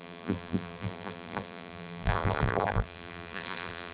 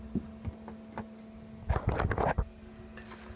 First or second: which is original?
second